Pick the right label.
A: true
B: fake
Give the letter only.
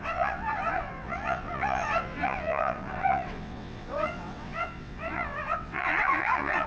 B